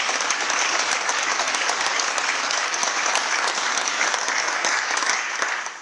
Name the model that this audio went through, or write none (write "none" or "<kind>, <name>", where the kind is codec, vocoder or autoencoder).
codec, DAC